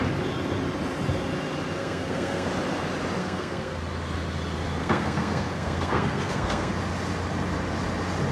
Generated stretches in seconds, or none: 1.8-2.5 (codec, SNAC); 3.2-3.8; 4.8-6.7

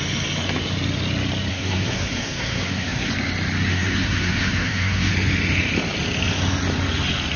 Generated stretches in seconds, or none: 1.5-3.1 (codec, SNAC); 3.7-5.1